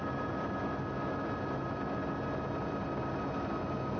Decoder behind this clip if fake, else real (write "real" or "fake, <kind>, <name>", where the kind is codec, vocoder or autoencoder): real